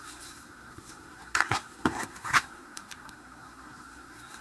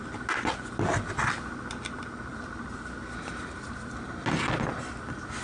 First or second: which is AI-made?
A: first